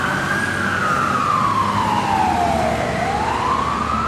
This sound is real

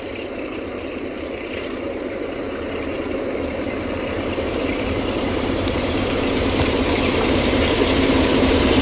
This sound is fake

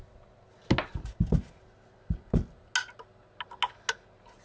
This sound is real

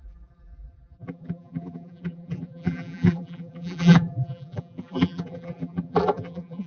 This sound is fake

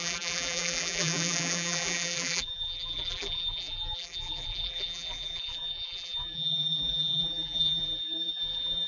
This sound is fake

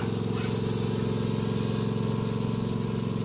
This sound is real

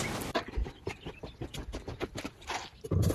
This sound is real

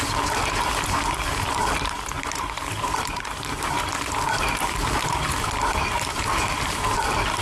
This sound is fake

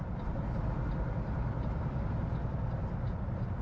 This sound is fake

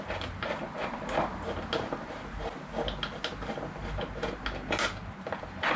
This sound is real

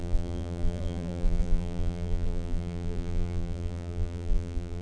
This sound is fake